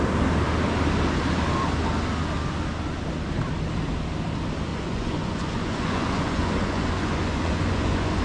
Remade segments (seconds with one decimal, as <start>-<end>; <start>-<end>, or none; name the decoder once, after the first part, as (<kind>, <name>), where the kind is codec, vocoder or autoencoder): 4.7-8.2 (vocoder, Vocos)